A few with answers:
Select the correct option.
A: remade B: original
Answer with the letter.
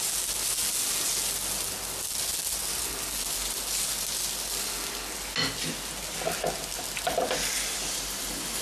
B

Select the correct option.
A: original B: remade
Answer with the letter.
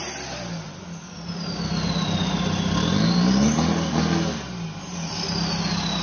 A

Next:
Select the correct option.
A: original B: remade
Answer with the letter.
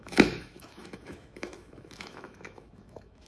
B